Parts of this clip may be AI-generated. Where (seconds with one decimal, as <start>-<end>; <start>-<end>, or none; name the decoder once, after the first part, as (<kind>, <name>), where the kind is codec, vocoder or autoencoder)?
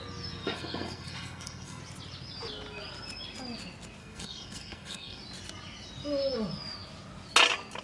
0.4-1.8 (codec, SNAC); 4.0-5.2